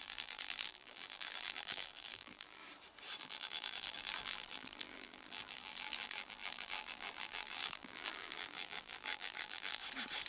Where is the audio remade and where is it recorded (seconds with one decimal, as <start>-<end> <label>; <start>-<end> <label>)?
0.0-2.6 remade; 2.6-3.2 recorded; 3.2-9.8 remade; 9.8-10.3 recorded

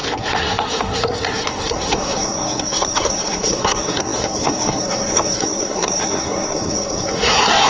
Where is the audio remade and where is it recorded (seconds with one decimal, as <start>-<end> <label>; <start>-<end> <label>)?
0.0-7.7 remade

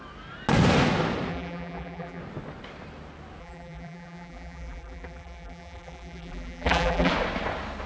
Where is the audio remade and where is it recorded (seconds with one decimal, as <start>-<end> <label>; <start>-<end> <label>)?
0.0-1.3 recorded; 1.3-2.2 remade; 2.2-3.4 recorded; 3.4-7.1 remade; 7.1-7.9 recorded